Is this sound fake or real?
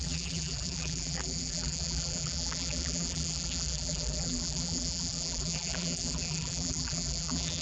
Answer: fake